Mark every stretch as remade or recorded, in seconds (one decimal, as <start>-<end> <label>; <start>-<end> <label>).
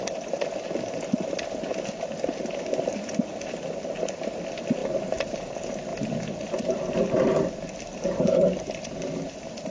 0.0-9.7 recorded